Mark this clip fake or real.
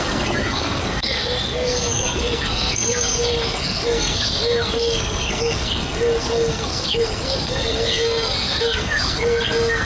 fake